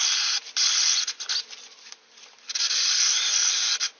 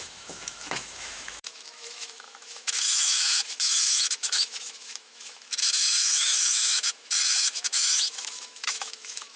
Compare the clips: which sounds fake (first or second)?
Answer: second